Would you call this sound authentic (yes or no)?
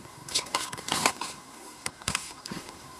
no